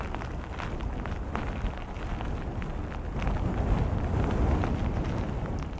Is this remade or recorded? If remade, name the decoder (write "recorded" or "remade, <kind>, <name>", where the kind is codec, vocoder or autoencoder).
recorded